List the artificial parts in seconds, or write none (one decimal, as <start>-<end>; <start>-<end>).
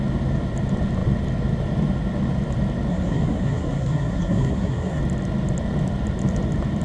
2.9-5.0